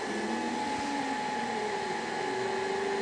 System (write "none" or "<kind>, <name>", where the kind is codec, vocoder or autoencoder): none